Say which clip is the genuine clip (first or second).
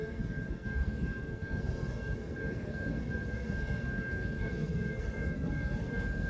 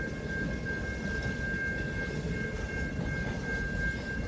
second